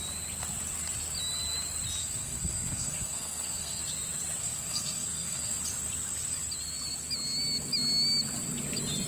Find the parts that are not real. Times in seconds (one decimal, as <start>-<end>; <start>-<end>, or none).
2.0-3.8; 4.4-5.6